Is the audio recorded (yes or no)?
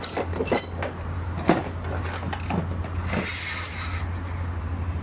yes